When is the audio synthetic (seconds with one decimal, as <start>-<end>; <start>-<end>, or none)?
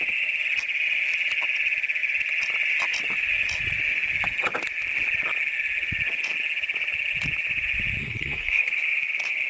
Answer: 8.0-8.7